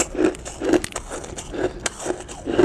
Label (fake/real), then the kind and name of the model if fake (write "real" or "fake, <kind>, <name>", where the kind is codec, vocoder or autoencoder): real